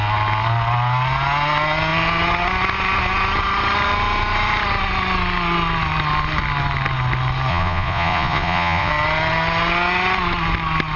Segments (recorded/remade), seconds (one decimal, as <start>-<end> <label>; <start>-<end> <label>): 0.0-7.5 recorded; 7.5-8.9 remade; 8.9-11.0 recorded